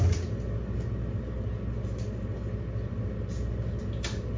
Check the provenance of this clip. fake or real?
real